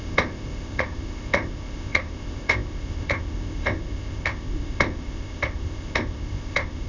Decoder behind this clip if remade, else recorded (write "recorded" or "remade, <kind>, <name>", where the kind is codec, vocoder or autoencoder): remade, codec, ZipCodec